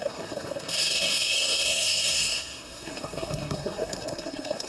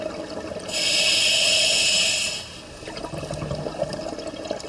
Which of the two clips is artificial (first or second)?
first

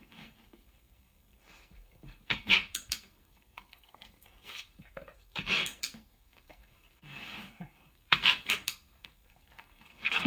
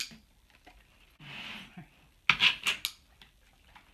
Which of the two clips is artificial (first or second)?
first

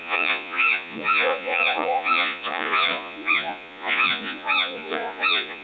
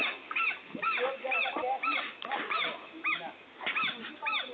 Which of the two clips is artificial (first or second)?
first